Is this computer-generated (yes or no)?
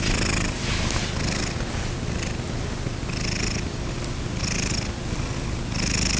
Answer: no